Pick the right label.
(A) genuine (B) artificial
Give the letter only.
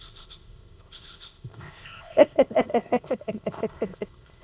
B